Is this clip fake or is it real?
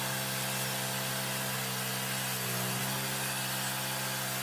real